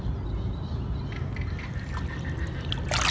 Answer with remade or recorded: recorded